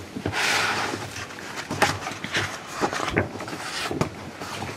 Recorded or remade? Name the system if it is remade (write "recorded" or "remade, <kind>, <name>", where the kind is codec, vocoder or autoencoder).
recorded